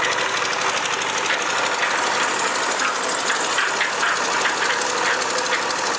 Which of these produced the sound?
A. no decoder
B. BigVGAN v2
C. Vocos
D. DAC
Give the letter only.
A